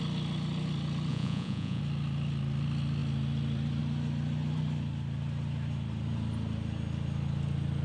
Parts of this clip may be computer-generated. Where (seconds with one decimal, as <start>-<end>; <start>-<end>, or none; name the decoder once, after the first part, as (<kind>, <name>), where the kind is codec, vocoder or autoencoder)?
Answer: 1.1-1.8 (vocoder, Vocos)